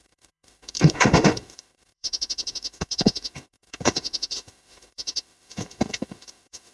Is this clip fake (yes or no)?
yes